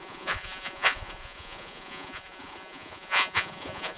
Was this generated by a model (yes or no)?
yes